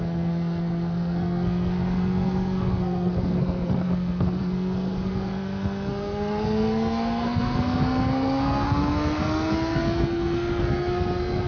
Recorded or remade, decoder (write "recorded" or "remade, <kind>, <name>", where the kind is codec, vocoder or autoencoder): remade, codec, SNAC